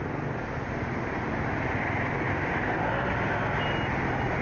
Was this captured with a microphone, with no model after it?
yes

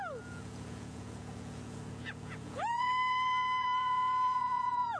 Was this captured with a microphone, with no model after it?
no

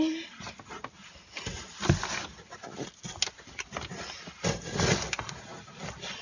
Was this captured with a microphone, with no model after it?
yes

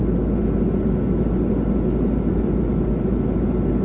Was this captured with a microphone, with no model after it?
yes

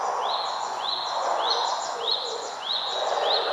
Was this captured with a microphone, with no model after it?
no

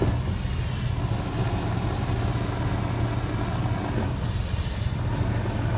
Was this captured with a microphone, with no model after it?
yes